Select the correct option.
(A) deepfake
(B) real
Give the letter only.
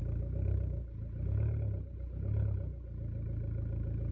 B